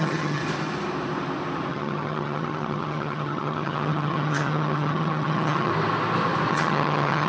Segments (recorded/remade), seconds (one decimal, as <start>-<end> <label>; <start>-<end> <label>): 0.0-0.4 remade; 0.4-1.7 recorded; 1.7-5.7 remade; 5.7-6.5 recorded; 6.5-7.3 remade